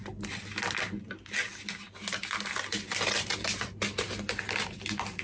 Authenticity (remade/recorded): recorded